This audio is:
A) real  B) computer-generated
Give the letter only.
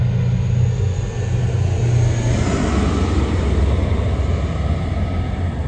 A